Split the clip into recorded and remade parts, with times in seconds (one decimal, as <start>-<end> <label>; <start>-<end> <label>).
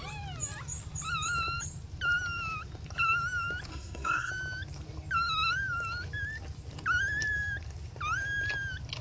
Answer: 0.0-3.7 recorded; 3.7-4.3 remade; 4.3-9.0 recorded